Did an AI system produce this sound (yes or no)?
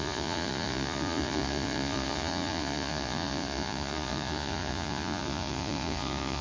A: yes